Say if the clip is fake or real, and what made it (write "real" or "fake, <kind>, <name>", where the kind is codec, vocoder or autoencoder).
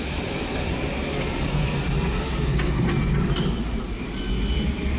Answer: real